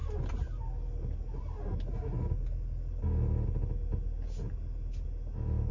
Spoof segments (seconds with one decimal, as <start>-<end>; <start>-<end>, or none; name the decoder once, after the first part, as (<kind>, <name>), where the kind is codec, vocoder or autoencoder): none